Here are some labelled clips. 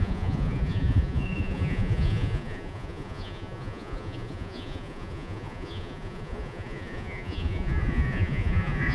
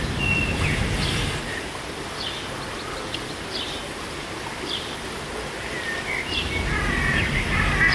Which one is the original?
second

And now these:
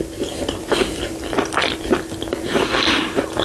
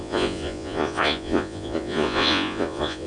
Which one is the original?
first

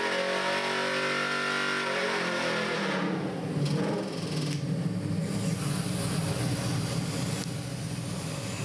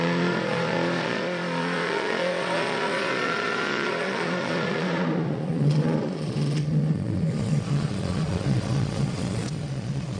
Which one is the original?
first